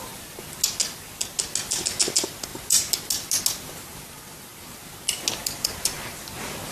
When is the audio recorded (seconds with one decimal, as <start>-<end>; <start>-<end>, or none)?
0.0-6.7